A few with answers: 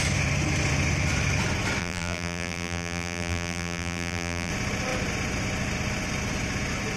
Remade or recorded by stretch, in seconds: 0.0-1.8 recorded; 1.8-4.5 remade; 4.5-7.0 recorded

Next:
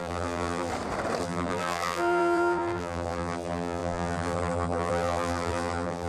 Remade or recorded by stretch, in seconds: 0.0-0.7 remade; 0.7-1.2 recorded; 1.2-6.1 remade